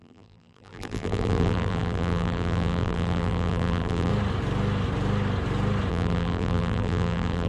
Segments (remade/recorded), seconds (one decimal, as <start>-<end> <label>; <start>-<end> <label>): 0.0-4.1 remade; 4.1-5.9 recorded; 5.9-7.5 remade